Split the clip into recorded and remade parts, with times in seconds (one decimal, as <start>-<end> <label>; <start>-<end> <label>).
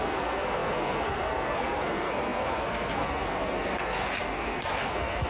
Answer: 0.0-5.3 remade